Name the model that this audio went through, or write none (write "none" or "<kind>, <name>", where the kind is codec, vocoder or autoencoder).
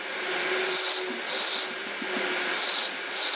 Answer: none